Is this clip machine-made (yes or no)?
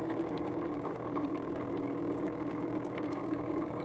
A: yes